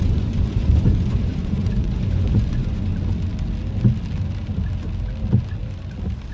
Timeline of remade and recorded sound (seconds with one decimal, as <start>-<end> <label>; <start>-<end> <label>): 0.0-2.9 remade; 2.9-6.3 recorded